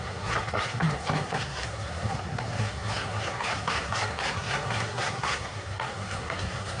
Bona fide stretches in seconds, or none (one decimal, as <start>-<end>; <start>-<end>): none